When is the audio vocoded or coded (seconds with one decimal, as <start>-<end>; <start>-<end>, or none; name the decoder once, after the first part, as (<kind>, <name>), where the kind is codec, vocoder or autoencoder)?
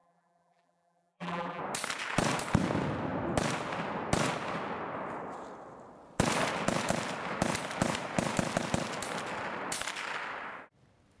0.0-1.6 (vocoder, BigVGAN v2)